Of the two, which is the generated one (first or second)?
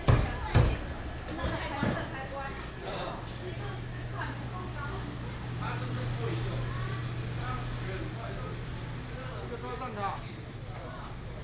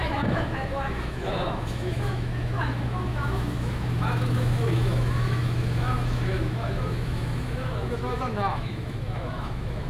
second